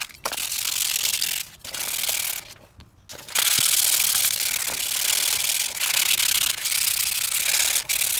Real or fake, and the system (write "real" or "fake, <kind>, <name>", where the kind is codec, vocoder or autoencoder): real